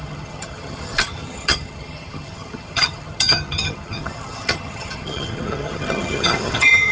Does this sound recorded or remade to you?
remade